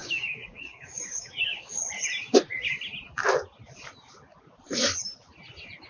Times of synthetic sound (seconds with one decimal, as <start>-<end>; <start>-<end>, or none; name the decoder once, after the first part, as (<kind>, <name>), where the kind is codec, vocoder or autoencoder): 0.0-1.7 (codec, DAC)